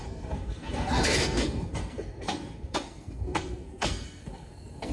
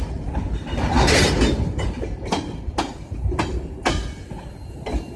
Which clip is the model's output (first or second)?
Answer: first